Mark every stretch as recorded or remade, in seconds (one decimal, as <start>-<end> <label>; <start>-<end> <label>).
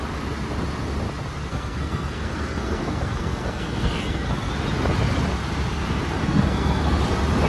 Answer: 0.0-1.5 recorded; 1.5-4.5 remade; 4.5-6.2 recorded; 6.2-7.0 remade; 7.0-7.5 recorded